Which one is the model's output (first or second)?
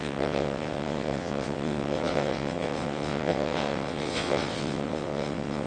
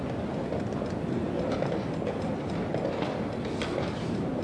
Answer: first